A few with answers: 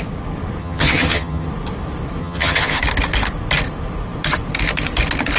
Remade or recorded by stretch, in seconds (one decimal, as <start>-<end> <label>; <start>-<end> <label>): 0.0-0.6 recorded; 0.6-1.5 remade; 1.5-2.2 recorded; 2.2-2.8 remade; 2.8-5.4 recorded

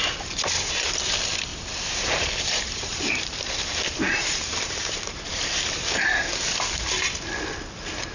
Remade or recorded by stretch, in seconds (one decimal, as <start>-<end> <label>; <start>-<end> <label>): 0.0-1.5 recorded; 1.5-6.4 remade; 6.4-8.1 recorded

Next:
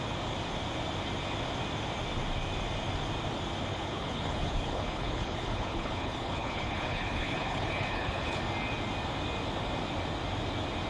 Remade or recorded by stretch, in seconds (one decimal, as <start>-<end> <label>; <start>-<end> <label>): 0.0-3.7 recorded; 3.7-8.4 remade; 8.4-10.9 recorded